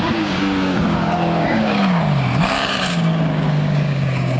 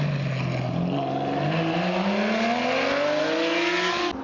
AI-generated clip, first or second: first